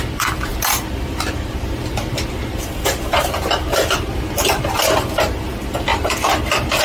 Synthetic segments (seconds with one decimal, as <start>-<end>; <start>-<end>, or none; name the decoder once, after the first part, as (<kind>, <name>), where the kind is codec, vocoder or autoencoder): 0.5-4.6 (vocoder, BigVGAN v2)

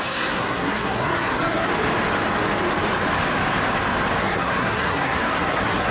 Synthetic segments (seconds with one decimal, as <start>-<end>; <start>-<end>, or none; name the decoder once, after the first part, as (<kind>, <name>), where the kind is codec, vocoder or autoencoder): 0.0-1.7 (codec, SNAC); 4.2-5.9